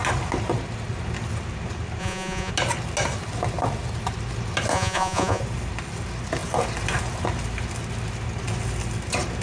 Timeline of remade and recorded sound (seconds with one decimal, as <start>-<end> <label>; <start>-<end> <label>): 0.0-2.0 recorded; 2.0-2.5 remade; 2.5-4.7 recorded; 4.7-5.4 remade; 5.4-9.4 recorded